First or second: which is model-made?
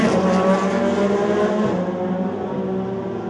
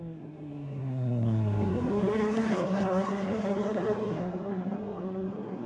second